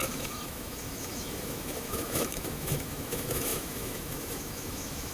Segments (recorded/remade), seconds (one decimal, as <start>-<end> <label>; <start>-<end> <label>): 0.0-5.1 remade